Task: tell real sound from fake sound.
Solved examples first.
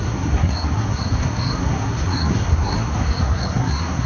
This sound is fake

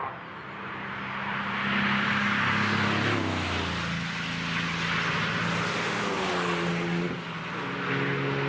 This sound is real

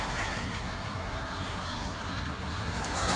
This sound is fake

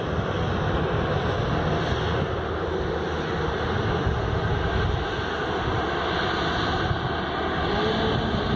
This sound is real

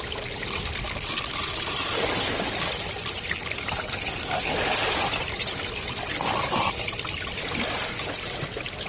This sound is real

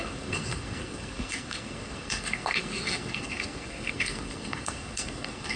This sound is fake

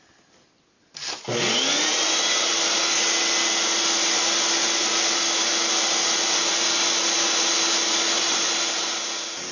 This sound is real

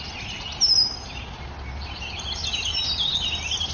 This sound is real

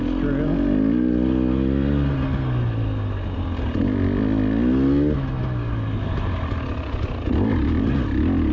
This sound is real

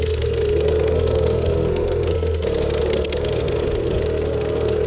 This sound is fake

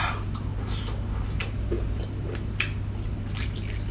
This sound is real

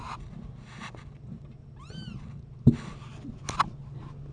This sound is real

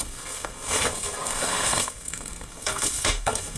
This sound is fake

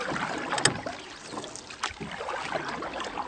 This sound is real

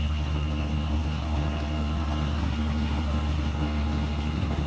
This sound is fake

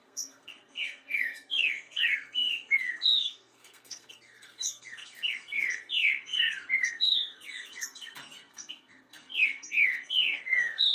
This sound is fake